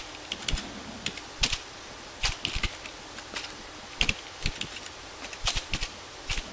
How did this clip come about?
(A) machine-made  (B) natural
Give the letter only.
A